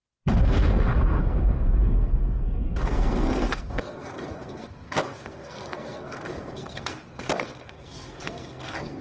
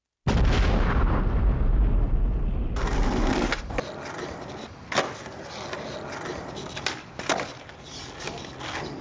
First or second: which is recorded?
second